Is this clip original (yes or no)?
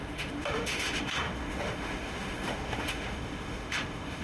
no